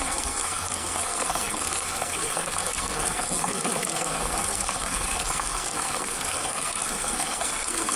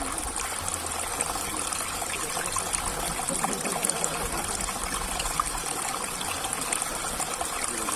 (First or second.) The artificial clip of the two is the first